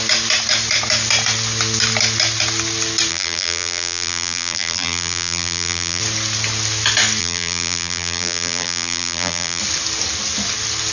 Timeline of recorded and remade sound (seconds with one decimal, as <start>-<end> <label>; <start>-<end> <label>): 0.0-3.1 recorded; 3.1-6.0 remade; 6.0-7.2 recorded; 7.2-9.6 remade; 9.6-10.9 recorded